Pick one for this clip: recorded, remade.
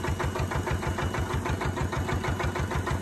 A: recorded